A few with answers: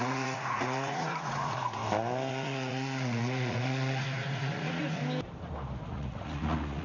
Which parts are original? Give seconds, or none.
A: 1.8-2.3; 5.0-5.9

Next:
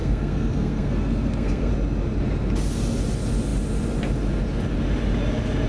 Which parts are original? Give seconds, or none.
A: 1.7-5.7

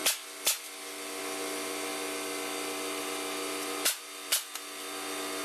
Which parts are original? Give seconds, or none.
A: 0.0-5.4

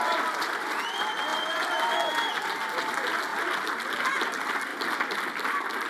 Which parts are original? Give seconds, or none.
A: 0.0-5.9

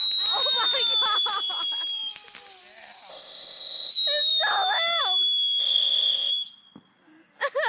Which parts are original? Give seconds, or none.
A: 0.0-3.1; 3.9-5.6; 6.3-7.7